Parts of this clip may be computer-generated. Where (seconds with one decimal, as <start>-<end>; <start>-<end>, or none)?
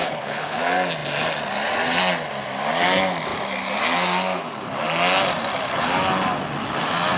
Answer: 0.0-0.6